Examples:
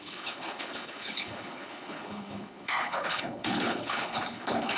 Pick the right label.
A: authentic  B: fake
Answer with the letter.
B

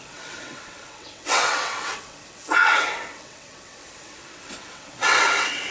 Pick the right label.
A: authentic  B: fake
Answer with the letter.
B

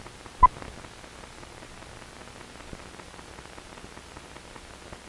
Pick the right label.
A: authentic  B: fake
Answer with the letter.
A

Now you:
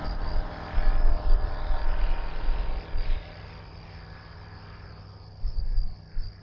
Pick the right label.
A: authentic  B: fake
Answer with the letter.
A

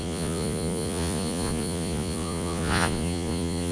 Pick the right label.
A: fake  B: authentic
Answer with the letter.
A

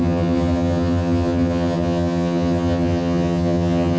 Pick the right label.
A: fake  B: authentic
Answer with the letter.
A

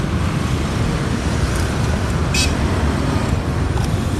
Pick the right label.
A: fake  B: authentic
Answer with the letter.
A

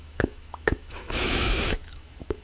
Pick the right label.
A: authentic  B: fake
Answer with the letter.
B